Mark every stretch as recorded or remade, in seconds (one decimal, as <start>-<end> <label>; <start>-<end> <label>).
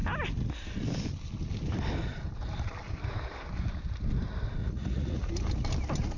0.0-4.6 recorded; 4.6-5.3 remade; 5.3-6.2 recorded